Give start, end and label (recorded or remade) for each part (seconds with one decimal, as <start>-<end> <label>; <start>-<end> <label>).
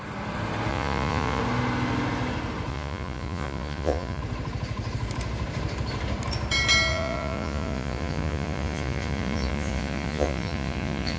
0.0-0.7 recorded; 0.7-1.4 remade; 1.4-2.7 recorded; 2.7-4.2 remade; 4.2-6.9 recorded; 6.9-11.2 remade